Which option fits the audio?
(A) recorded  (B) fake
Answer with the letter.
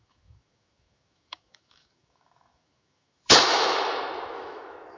B